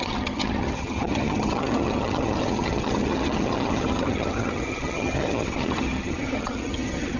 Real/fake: fake